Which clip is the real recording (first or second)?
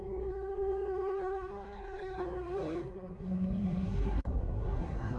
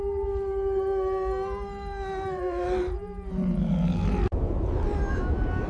second